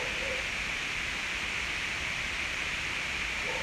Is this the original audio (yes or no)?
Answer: yes